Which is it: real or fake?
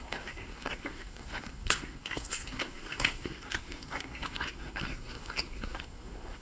fake